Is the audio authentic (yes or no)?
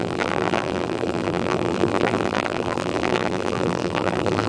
no